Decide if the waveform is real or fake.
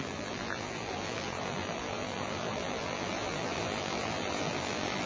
fake